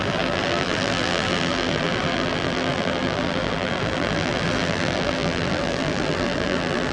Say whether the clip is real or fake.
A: fake